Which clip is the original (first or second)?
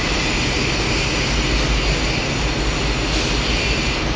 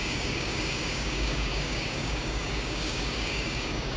first